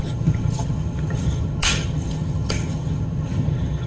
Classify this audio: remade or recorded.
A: remade